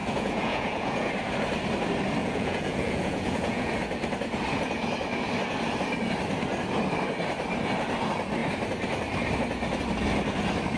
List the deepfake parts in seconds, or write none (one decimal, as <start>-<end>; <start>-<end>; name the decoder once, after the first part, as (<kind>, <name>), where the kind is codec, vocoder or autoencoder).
0.0-1.1 (vocoder, Vocos); 2.2-3.7